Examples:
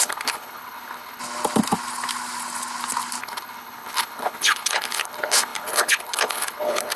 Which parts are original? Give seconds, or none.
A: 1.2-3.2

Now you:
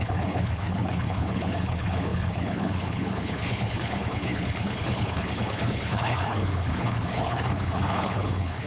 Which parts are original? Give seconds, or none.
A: none